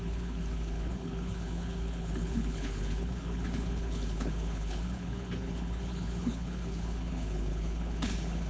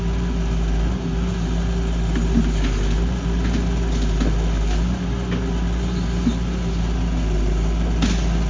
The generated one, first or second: first